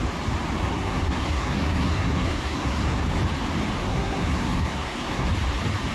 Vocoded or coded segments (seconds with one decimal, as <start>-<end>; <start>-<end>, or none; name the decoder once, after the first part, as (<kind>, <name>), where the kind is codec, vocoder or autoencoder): 0.6-3.2 (codec, SNAC); 3.9-5.3